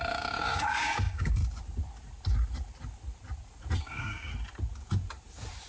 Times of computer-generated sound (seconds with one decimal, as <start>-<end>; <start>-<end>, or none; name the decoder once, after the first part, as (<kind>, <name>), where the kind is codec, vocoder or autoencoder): 0.0-1.4 (codec, DAC); 3.8-4.3